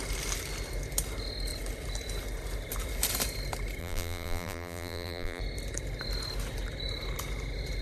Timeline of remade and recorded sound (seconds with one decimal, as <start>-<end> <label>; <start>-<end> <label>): 0.0-3.8 recorded; 3.8-5.4 remade; 5.4-7.8 recorded